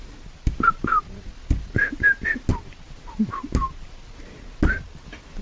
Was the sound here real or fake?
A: real